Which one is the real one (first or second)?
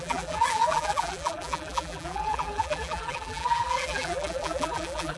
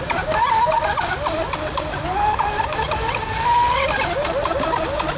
second